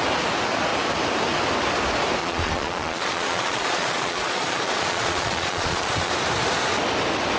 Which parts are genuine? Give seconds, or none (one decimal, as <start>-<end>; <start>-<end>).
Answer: 0.0-2.2; 6.1-7.4